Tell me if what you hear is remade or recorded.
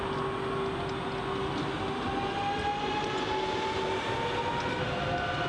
recorded